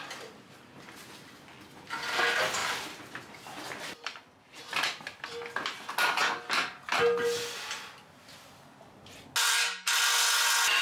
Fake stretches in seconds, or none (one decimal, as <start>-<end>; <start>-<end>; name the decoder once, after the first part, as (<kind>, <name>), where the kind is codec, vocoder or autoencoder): 2.6-4.6 (vocoder, BigVGAN v2)